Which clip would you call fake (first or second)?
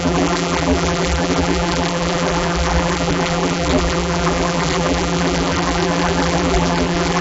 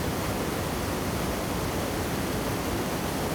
first